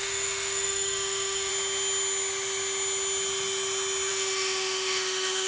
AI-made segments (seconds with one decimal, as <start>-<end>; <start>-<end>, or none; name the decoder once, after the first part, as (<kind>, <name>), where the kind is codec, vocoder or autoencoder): 0.0-1.5 (autoencoder, DAC-VAE); 4.1-5.5